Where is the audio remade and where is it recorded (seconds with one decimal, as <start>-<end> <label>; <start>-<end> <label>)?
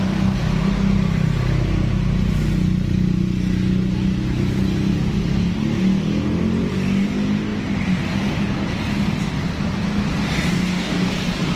0.0-10.5 recorded; 10.5-11.1 remade; 11.1-11.6 recorded